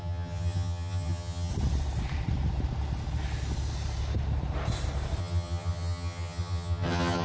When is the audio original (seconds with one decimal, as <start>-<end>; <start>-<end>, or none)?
1.5-5.2